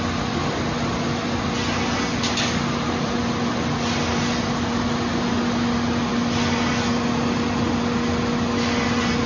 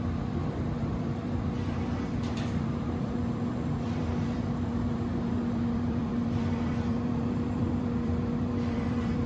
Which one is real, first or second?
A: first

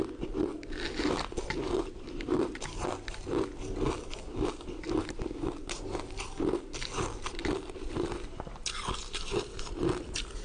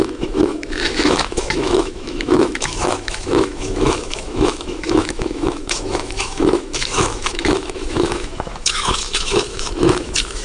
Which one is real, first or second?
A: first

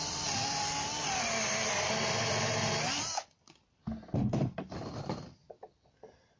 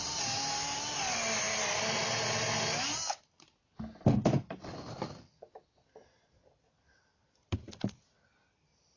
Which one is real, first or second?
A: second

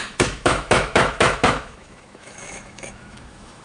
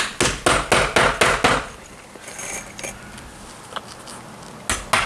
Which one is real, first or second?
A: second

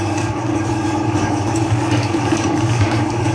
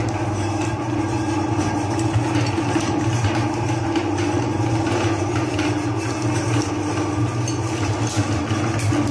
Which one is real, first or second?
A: second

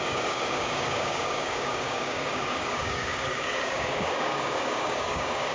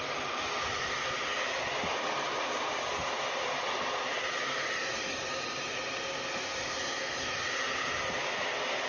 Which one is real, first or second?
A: second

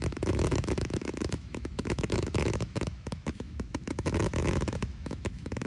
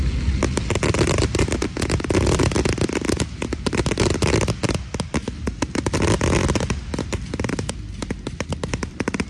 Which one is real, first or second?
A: second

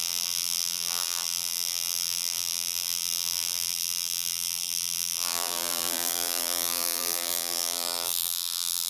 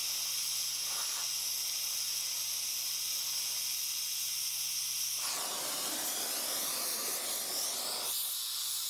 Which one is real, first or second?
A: second